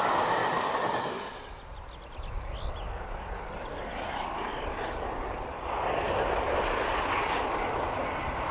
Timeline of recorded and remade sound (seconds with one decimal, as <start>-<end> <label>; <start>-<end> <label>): 0.0-8.5 recorded